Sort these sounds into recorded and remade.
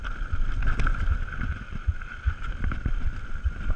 recorded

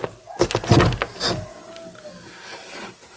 recorded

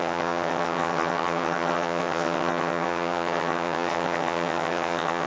remade